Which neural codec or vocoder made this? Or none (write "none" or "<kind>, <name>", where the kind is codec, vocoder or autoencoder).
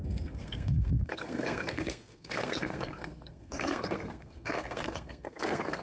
codec, SNAC